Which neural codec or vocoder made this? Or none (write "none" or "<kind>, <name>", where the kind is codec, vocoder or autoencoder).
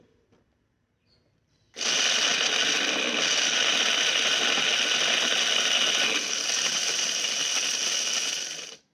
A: none